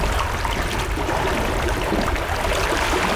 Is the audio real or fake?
real